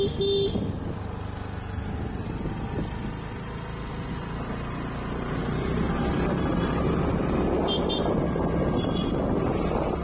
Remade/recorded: recorded